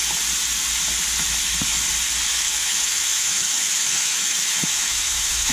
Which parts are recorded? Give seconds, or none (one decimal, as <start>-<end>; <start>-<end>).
0.0-2.3